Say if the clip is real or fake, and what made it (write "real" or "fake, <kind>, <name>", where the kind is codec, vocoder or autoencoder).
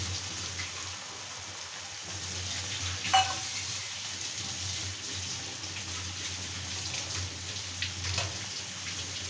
real